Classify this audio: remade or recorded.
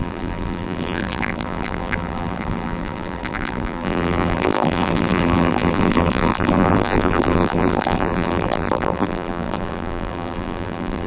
remade